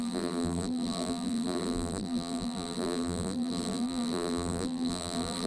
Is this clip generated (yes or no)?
yes